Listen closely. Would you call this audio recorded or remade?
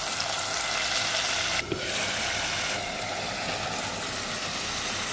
recorded